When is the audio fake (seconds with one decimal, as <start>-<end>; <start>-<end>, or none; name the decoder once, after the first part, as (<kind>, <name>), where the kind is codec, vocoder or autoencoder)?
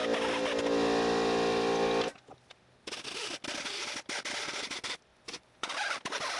5.1-5.7 (vocoder, Vocos)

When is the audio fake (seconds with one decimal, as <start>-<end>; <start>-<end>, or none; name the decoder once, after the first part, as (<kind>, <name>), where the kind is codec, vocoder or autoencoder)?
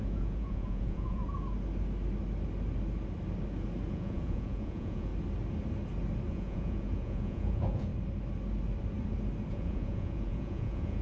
0.0-1.2 (vocoder, Vocos); 3.9-5.1; 6.3-7.9; 9.5-11.0